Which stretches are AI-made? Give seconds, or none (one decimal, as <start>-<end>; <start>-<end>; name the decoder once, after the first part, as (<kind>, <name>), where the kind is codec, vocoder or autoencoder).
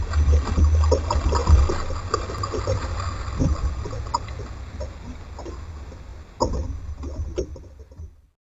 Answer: none